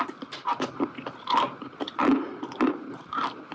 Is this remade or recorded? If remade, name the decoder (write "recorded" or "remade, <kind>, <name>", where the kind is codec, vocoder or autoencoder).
recorded